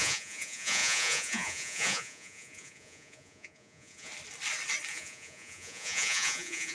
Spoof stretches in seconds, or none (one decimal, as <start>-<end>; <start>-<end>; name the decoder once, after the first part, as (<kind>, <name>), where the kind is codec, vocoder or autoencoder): 0.0-4.1 (vocoder, Vocos); 4.9-6.7